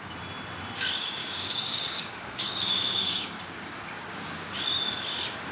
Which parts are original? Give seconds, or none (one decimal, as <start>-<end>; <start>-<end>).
0.0-1.2; 4.5-5.5